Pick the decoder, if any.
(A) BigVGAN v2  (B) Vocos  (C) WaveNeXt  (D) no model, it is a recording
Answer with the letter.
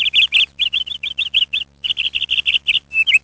A